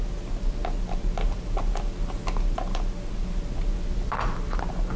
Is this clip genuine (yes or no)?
yes